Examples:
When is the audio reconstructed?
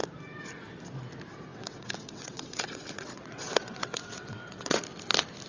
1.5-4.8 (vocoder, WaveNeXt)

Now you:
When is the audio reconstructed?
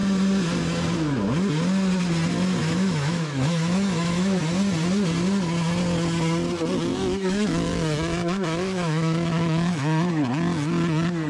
2.6-4.4 (autoencoder, DAC-VAE); 6.9-10.1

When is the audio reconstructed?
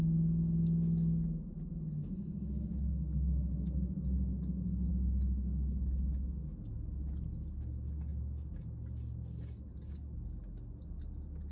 1.5-4.9 (autoencoder, DAC-VAE)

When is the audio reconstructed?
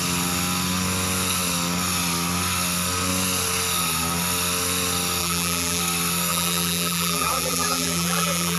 5.2-5.8 (vocoder, BigVGAN v2); 6.3-8.6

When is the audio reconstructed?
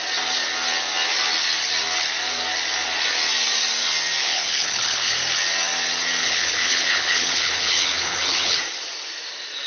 4.2-5.1 (codec, HILCodec); 6.2-8.6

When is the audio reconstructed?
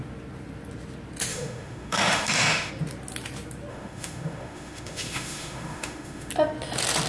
1.3-2.7 (autoencoder, DAC-VAE); 3.7-6.3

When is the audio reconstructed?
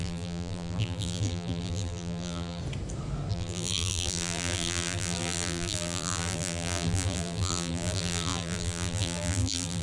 0.0-2.6 (vocoder, BigVGAN v2); 3.3-9.8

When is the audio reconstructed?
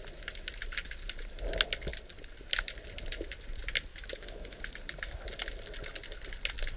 3.9-4.6 (autoencoder, DAC-VAE)